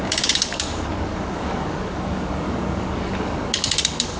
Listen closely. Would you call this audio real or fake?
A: fake